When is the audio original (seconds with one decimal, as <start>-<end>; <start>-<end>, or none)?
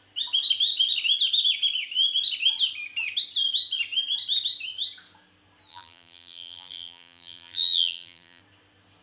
0.0-5.7; 8.4-9.0